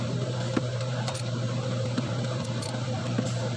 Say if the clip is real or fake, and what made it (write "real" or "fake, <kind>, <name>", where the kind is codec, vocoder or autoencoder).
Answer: fake, vocoder, BigVGAN v2